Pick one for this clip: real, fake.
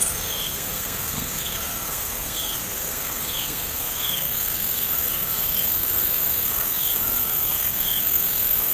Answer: fake